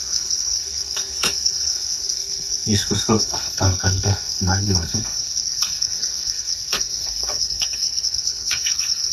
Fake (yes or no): yes